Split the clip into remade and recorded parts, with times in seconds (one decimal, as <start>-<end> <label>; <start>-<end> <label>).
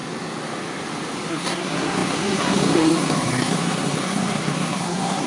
0.0-1.3 recorded; 1.3-5.3 remade